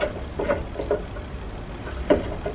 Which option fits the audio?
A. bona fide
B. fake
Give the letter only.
A